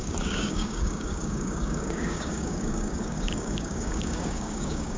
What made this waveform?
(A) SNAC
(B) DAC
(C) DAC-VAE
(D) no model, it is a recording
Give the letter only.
B